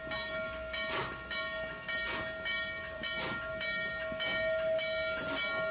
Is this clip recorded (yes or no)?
yes